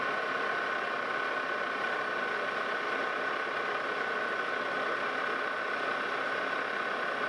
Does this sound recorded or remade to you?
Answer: recorded